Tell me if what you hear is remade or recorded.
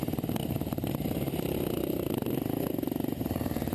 remade